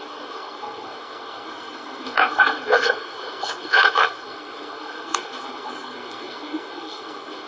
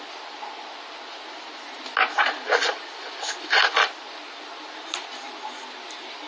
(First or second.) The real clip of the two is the second